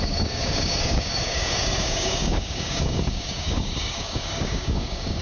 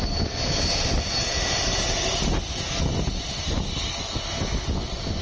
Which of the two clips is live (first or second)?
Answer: second